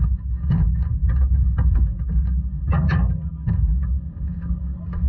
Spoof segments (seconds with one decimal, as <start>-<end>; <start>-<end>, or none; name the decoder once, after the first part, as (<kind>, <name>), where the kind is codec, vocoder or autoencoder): none